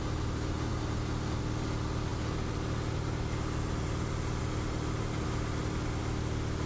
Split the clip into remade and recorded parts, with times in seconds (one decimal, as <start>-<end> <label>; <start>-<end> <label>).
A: 0.0-6.7 recorded